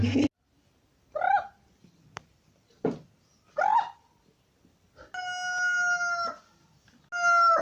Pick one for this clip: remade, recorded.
recorded